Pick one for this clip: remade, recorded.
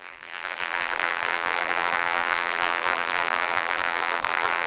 remade